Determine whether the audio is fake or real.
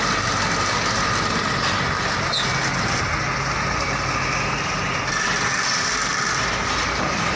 real